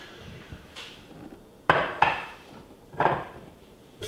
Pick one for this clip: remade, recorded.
remade